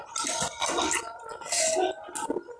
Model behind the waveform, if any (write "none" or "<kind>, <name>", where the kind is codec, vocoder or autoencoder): none